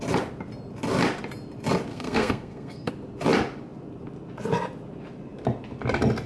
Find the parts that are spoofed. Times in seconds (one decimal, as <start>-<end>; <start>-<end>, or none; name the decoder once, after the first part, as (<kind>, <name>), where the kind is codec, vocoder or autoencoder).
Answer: 1.9-2.9 (codec, SNAC)